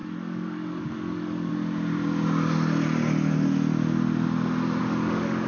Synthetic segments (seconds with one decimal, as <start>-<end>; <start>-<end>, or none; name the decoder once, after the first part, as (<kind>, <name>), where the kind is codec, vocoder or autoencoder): 0.0-1.5 (codec, DAC); 4.8-5.5